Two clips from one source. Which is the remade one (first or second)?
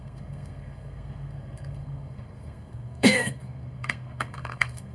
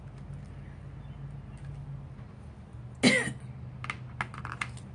first